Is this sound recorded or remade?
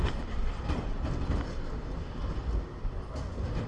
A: recorded